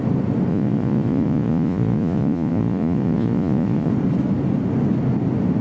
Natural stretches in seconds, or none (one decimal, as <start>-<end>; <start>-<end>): 0.0-0.5; 3.9-5.6